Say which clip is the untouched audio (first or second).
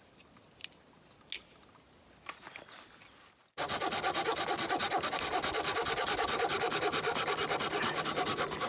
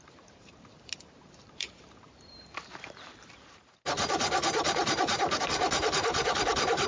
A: first